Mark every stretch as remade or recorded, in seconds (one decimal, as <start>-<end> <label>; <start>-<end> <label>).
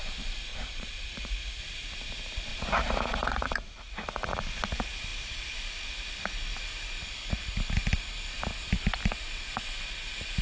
0.0-0.5 recorded; 0.5-1.6 remade; 1.6-2.5 recorded; 2.5-4.3 remade; 4.3-10.4 recorded